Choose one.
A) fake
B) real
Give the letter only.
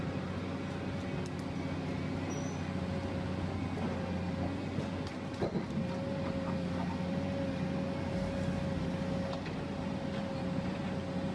B